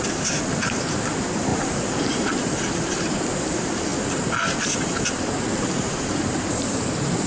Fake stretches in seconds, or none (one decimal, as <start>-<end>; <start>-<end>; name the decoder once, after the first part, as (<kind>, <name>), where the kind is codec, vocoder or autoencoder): 0.0-3.9 (vocoder, BigVGAN v2); 4.6-7.3